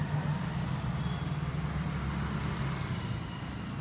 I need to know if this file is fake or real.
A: real